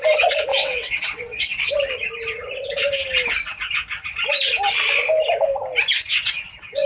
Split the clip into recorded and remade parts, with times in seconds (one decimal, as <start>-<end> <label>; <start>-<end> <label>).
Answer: 0.0-0.5 recorded; 0.5-1.7 remade; 1.7-6.1 recorded; 6.1-6.9 remade